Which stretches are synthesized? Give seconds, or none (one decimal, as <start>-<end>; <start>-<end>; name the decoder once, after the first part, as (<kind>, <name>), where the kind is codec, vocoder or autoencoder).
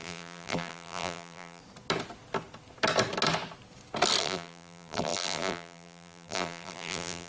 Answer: 0.0-1.6 (vocoder, BigVGAN v2); 4.2-7.3